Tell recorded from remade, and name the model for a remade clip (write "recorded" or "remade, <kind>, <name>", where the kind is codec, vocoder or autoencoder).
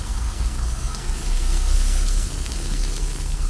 remade, codec, SNAC